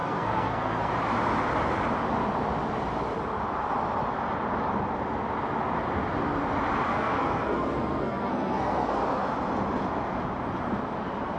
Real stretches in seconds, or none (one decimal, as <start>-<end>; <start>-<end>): 0.9-6.9; 9.0-11.4